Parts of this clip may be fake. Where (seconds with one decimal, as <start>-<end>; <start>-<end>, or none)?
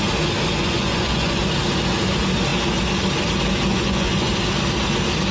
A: 0.6-1.4; 3.7-4.3